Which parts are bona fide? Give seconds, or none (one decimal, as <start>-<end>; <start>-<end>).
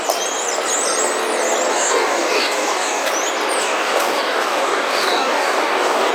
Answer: 0.0-1.7; 3.1-3.6